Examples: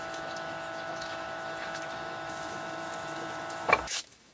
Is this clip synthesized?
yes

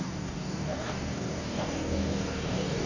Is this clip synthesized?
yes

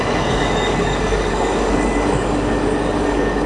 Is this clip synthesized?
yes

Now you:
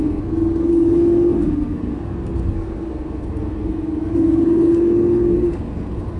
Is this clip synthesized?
yes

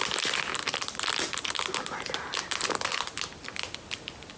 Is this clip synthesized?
no